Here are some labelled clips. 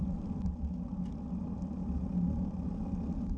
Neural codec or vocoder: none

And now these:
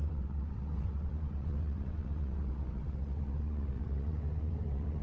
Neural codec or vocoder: vocoder, WaveNeXt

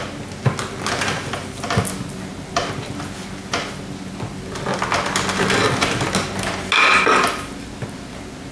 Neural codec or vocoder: none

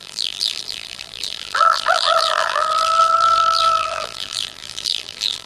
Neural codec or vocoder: vocoder, BigVGAN v2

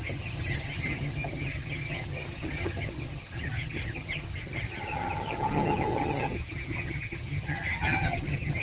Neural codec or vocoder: vocoder, HiFi-GAN